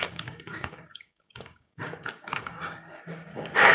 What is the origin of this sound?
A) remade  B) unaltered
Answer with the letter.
A